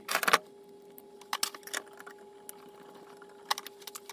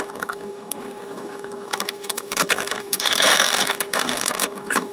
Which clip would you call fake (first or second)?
second